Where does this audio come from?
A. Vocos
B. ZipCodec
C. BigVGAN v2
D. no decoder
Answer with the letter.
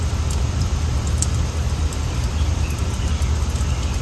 C